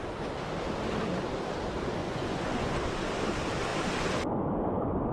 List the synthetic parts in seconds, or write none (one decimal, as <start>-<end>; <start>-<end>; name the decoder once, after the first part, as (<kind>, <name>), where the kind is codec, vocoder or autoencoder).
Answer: 2.0-2.8 (vocoder, Vocos)